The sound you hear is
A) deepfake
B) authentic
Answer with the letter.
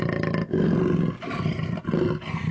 B